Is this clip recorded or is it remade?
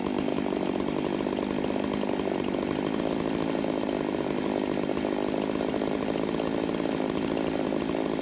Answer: recorded